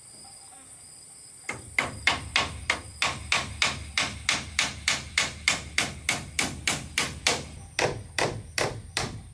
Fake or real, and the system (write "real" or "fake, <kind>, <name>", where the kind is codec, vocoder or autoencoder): fake, vocoder, BigVGAN v2